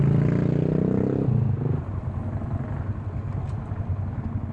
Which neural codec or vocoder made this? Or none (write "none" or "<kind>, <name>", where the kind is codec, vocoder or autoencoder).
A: none